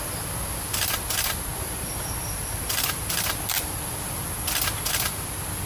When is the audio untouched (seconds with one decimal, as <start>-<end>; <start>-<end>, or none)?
0.0-5.7